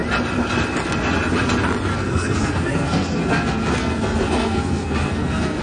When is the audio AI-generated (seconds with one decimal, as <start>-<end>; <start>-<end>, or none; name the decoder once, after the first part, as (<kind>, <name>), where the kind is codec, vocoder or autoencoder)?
1.9-5.6 (codec, SNAC)